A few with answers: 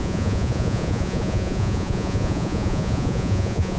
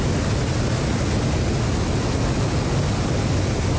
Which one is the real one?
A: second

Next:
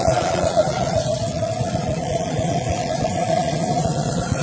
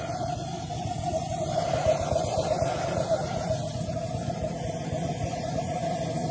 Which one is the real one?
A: second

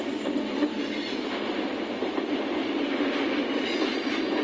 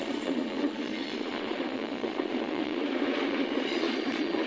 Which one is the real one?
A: first